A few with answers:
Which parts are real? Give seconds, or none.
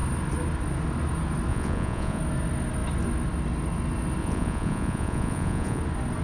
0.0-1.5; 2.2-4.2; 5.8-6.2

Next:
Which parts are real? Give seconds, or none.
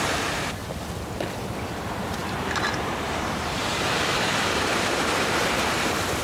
0.6-1.7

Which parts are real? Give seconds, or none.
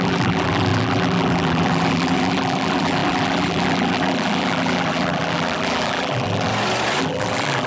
6.5-7.0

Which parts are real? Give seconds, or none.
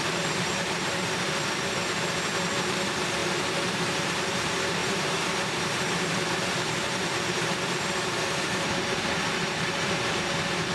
1.8-2.3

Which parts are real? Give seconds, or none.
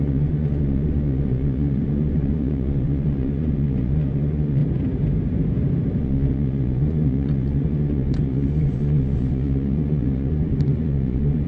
4.6-6.0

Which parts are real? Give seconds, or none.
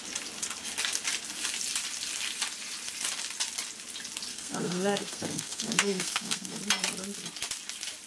0.0-4.3; 6.6-8.1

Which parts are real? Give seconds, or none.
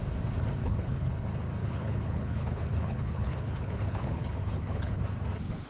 0.0-0.6; 1.1-1.6; 5.0-5.7